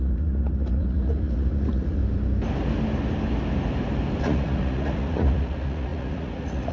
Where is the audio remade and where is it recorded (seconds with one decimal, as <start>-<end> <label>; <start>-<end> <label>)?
0.0-2.0 remade; 2.0-4.2 recorded; 4.2-6.7 remade